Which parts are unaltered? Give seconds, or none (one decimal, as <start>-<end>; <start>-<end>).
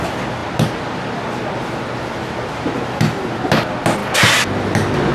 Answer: 0.0-5.1